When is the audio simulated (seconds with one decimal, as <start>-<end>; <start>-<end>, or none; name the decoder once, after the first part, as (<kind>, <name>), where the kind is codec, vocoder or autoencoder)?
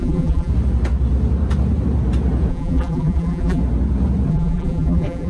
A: 0.0-0.5 (vocoder, BigVGAN v2); 2.5-3.6; 4.3-5.3